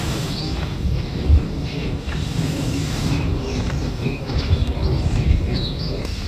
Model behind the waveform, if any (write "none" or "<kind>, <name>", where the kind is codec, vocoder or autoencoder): codec, DAC